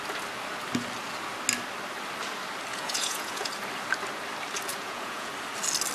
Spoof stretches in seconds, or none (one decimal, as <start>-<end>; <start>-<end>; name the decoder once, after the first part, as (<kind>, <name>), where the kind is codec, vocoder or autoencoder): 2.7-3.5 (vocoder, Vocos); 4.7-5.3

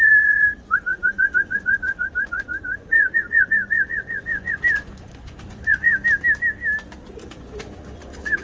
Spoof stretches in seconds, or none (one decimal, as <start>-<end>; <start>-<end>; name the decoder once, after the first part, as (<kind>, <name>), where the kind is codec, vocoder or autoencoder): 0.0-5.9 (vocoder, Vocos); 7.2-8.4

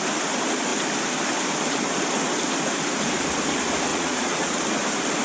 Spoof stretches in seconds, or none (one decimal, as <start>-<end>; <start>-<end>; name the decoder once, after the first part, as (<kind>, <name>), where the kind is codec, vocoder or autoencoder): 3.9-4.6 (vocoder, Vocos)

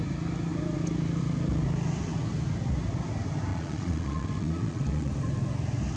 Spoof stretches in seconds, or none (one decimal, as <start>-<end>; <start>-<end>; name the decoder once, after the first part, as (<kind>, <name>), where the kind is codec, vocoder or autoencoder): 3.5-5.1 (vocoder, Vocos)